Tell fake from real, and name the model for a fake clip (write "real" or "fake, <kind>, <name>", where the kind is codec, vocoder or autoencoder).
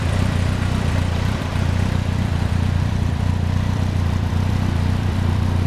fake, vocoder, BigVGAN v2